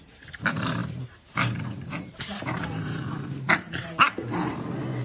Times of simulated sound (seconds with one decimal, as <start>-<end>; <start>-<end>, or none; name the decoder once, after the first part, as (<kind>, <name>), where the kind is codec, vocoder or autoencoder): 0.0-5.0 (vocoder, BigVGAN v2)